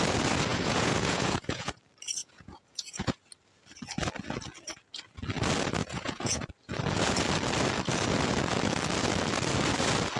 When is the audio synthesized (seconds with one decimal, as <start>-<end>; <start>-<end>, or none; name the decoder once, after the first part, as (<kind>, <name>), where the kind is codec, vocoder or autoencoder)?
0.5-1.8 (vocoder, Vocos); 2.2-3.2; 5.8-6.4